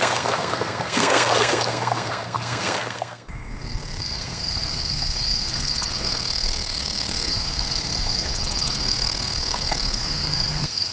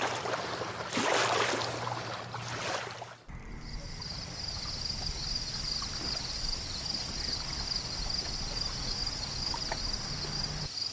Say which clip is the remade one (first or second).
first